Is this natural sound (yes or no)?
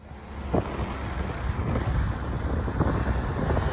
yes